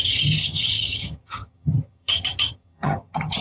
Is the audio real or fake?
fake